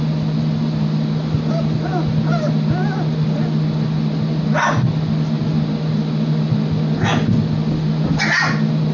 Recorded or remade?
recorded